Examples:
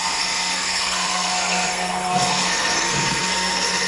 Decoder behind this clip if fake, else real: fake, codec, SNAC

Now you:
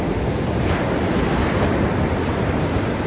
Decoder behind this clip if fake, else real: real